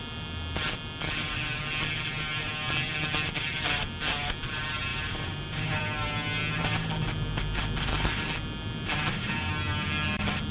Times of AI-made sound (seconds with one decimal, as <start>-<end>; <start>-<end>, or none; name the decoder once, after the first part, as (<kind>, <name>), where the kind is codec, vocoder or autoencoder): 4.9-5.8 (vocoder, BigVGAN v2)